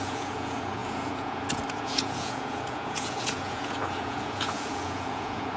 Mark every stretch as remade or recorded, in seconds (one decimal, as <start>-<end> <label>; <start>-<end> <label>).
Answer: 0.0-5.6 remade